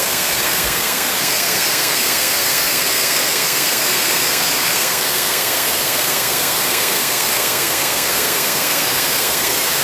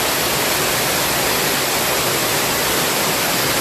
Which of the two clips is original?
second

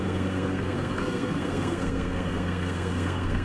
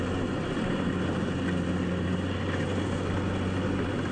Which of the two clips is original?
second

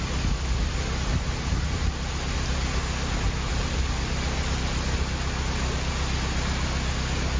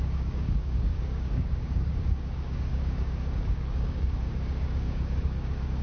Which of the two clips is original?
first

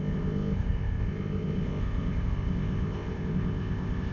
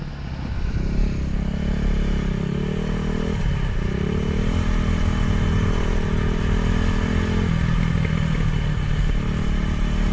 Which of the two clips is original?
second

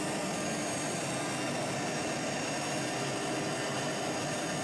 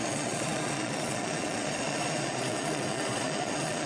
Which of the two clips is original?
first